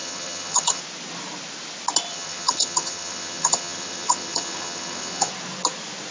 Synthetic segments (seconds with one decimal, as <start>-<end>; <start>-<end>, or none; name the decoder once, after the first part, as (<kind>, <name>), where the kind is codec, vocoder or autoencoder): 0.0-0.8 (vocoder, HiFi-GAN); 2.1-5.3